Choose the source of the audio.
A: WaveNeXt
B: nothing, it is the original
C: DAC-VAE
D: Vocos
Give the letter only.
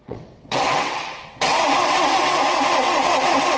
A